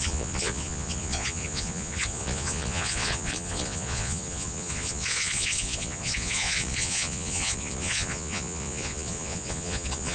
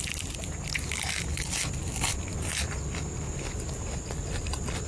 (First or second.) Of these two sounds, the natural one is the second